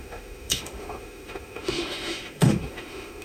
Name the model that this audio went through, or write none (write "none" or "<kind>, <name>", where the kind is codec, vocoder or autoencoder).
autoencoder, DAC-VAE